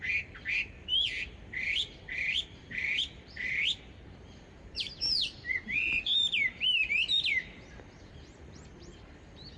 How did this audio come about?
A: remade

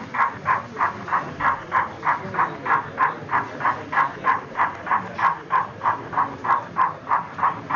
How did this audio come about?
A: recorded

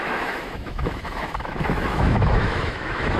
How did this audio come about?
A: remade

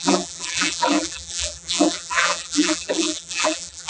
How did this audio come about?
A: remade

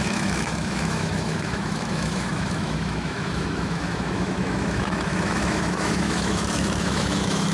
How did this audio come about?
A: remade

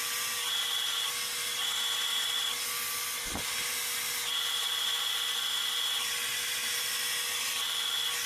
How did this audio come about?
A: recorded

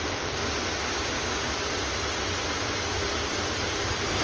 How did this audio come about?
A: recorded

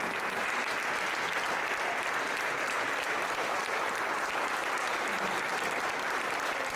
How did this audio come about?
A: recorded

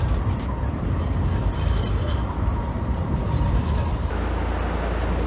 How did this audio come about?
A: recorded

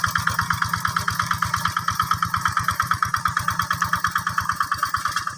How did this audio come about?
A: recorded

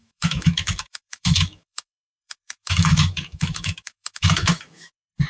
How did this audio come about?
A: remade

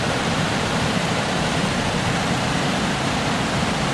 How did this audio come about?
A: remade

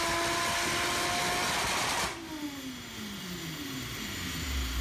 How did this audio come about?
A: recorded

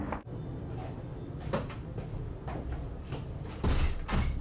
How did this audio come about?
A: recorded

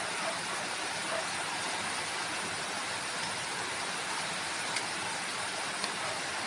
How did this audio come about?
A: remade